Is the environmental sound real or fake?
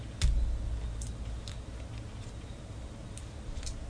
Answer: real